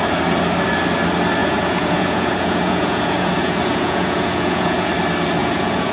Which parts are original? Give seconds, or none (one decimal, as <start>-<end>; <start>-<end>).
0.0-1.4; 4.9-5.4